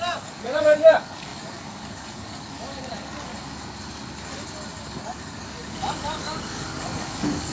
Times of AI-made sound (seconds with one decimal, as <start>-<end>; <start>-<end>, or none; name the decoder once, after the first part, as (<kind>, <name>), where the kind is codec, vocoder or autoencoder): 0.0-3.3 (codec, DAC); 5.0-7.5